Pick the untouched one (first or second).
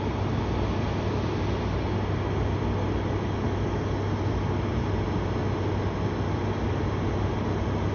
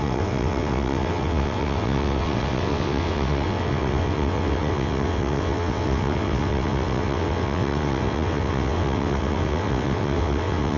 first